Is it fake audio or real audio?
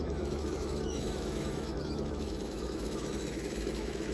fake